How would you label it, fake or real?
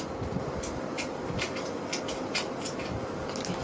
real